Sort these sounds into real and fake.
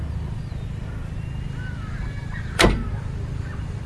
real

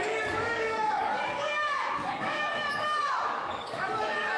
fake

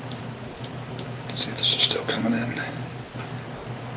real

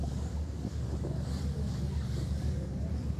fake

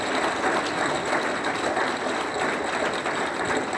real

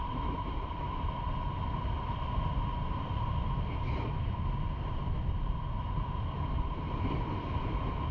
real